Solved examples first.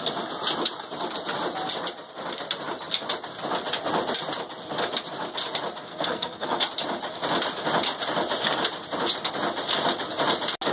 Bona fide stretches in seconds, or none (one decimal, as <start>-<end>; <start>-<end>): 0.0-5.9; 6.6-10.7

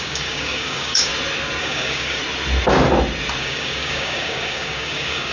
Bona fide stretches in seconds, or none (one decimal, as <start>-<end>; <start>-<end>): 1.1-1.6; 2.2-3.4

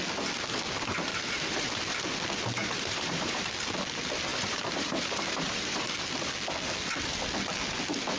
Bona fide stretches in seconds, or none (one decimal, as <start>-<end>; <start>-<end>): 0.0-1.1; 1.8-2.6; 3.4-4.3; 5.9-8.2

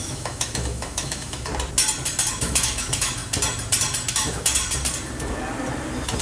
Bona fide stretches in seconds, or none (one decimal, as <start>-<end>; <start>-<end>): 1.5-2.3; 3.2-4.1; 4.6-6.2